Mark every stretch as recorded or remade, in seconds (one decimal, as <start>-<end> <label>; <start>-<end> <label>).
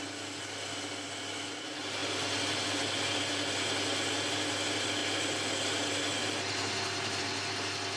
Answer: 0.0-8.0 recorded